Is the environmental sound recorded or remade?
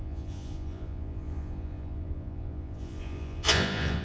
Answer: remade